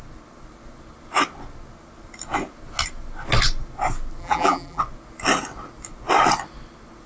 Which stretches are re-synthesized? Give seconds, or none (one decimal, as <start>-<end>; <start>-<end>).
4.2-4.8